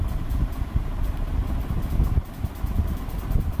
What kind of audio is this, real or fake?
real